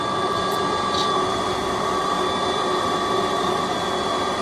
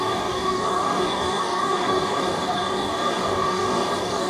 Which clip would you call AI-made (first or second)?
second